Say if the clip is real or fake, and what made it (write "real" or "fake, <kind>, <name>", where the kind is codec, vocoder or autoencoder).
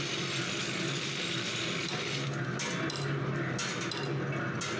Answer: real